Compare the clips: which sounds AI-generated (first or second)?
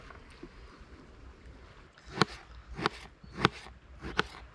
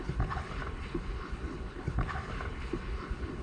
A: second